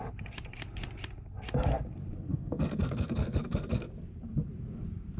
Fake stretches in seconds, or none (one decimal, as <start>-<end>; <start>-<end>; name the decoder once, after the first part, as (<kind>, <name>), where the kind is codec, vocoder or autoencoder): 2.3-3.9 (codec, SNAC)